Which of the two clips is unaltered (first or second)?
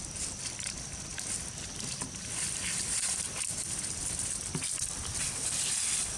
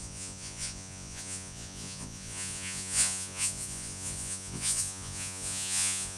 first